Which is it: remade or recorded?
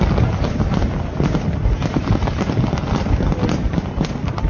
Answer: recorded